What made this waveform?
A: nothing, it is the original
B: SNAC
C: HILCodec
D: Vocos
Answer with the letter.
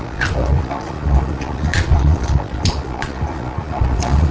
D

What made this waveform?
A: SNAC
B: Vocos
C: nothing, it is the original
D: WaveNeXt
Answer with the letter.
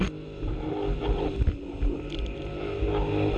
C